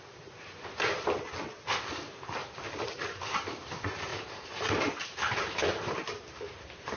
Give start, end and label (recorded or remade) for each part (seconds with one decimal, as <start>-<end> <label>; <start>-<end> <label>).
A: 0.0-4.1 recorded; 4.1-7.0 remade